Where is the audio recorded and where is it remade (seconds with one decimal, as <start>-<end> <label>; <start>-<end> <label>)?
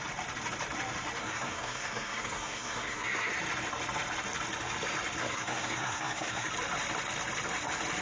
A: 0.0-1.2 recorded; 1.2-3.3 remade; 3.3-5.2 recorded; 5.2-6.5 remade; 6.5-8.0 recorded